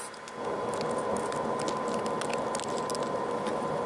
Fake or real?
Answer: real